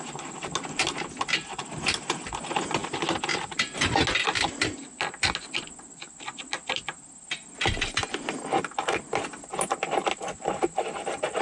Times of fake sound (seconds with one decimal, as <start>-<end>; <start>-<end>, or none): none